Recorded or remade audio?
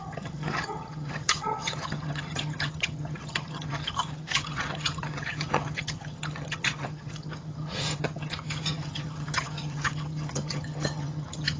remade